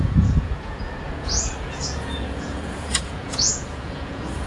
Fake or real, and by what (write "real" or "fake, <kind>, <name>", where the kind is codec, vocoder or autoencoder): fake, vocoder, Vocos